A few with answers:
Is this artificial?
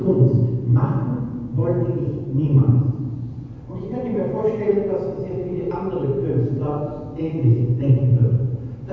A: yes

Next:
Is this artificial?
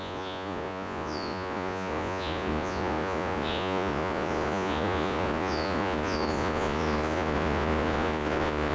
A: yes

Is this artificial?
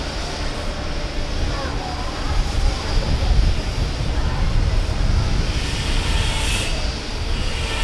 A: no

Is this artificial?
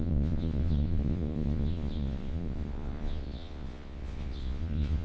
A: yes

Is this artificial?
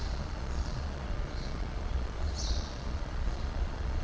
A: yes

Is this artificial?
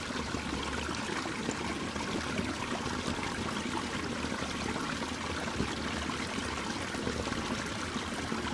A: no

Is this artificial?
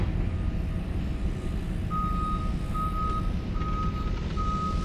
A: no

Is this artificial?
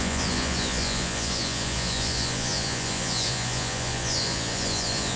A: yes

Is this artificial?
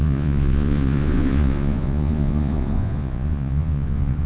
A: yes